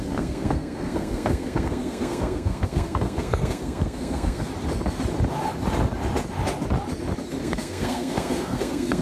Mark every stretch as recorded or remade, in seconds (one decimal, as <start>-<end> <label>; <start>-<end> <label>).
0.0-4.5 remade; 4.5-7.4 recorded; 7.4-9.0 remade